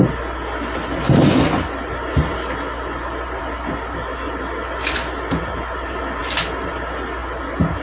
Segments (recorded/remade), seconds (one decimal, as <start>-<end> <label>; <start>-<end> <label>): 0.0-2.3 recorded; 2.3-3.4 remade; 3.4-6.2 recorded; 6.2-6.7 remade; 6.7-7.8 recorded

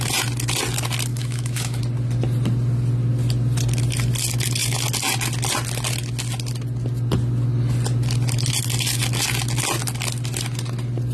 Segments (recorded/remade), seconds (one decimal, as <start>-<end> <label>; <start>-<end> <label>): 0.0-1.1 recorded; 1.1-1.8 remade; 1.8-11.1 recorded

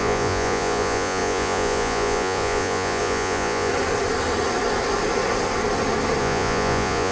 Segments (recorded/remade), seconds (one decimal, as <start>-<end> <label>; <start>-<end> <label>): 0.0-3.7 remade; 3.7-6.2 recorded; 6.2-7.1 remade

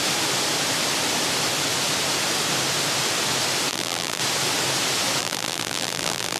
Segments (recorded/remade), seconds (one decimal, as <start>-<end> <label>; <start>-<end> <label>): 0.0-3.7 recorded; 3.7-4.2 remade; 4.2-5.2 recorded; 5.2-6.4 remade

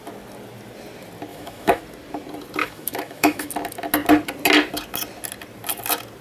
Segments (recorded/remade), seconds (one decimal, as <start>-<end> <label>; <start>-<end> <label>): 0.0-1.3 recorded; 1.3-1.8 remade; 1.8-2.6 recorded; 2.6-3.5 remade; 3.5-6.2 recorded

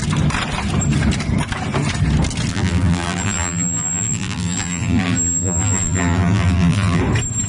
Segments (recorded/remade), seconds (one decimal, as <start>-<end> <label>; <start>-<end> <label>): 0.0-2.5 recorded; 2.5-7.0 remade; 7.0-7.5 recorded

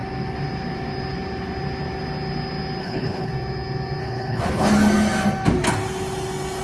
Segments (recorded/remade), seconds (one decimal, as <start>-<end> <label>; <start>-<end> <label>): 0.0-2.8 recorded; 2.8-3.3 remade; 3.3-4.0 recorded; 4.0-4.7 remade; 4.7-6.6 recorded

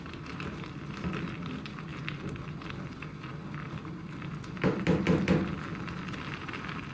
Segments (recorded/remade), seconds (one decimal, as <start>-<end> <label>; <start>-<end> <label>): 0.0-1.9 recorded; 1.9-2.6 remade; 2.6-3.3 recorded; 3.3-5.2 remade; 5.2-5.7 recorded; 5.7-6.2 remade; 6.2-6.9 recorded